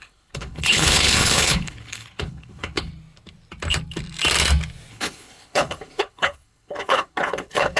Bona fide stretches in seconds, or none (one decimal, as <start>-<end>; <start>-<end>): 2.9-4.9